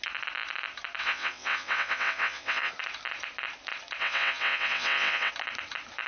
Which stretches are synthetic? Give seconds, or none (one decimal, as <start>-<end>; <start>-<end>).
1.0-2.7; 4.0-5.3